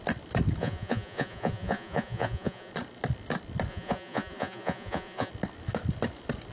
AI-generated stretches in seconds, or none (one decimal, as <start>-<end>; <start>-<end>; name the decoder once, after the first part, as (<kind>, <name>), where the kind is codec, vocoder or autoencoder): 0.6-2.7 (vocoder, Vocos); 3.7-5.3